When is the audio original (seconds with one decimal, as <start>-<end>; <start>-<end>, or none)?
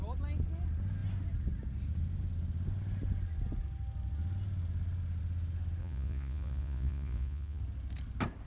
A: 0.0-5.8; 7.6-8.5